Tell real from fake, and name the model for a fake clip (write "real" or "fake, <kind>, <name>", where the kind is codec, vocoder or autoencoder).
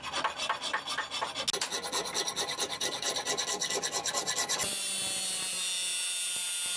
real